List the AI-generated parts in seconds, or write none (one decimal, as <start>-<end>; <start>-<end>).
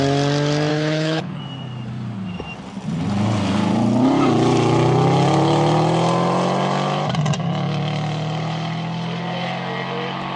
0.7-1.4